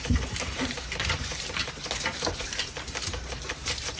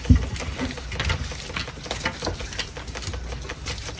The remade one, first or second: first